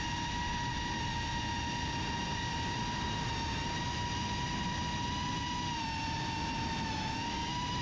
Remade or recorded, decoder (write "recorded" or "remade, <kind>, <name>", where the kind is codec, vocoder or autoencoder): recorded